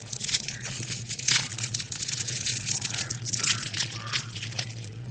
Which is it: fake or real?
fake